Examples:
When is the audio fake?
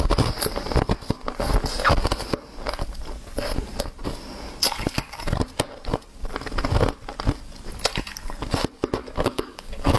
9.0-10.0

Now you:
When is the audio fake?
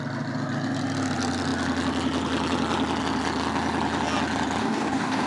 4.6-5.3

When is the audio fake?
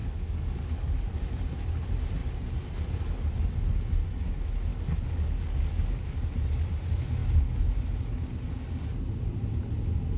0.0-1.0; 4.7-6.2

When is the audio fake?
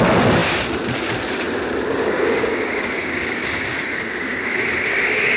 1.9-5.4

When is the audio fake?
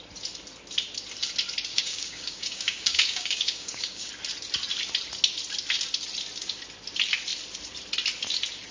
1.7-4.1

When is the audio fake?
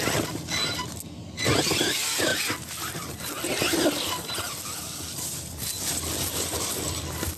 none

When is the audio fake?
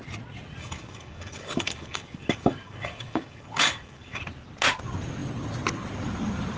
0.6-4.2